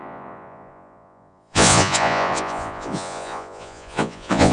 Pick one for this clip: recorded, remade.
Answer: remade